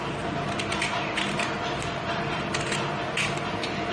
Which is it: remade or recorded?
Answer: recorded